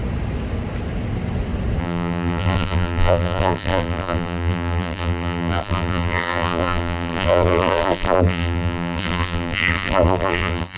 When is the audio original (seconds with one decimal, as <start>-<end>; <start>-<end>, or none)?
0.0-1.8

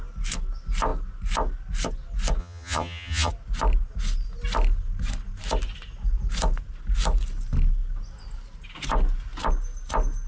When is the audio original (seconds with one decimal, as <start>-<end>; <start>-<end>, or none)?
0.0-2.4; 3.3-10.3

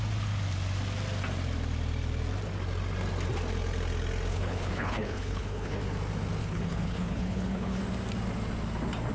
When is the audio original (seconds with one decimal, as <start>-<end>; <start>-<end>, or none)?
0.0-4.3; 5.8-6.4; 7.8-9.1

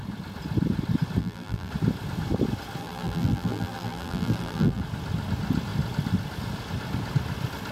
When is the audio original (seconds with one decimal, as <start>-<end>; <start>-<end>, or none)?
0.0-1.2; 1.7-2.8; 4.8-7.7

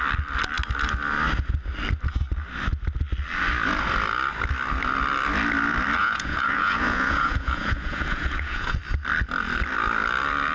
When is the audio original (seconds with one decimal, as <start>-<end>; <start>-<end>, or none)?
0.0-6.0; 8.8-10.5